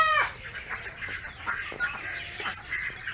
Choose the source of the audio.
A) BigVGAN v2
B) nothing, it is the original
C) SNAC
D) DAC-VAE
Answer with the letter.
B